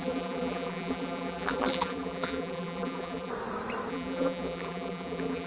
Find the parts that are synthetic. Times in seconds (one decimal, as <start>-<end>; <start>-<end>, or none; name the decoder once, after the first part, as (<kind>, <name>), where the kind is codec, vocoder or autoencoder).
0.0-3.3 (vocoder, BigVGAN v2); 3.9-5.5